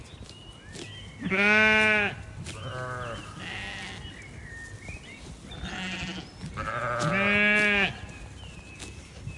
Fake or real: real